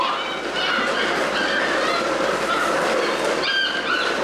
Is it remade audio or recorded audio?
recorded